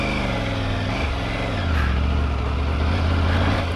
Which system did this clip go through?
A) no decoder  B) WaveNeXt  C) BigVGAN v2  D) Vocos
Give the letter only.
A